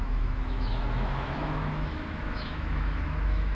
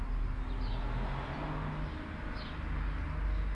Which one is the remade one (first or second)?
first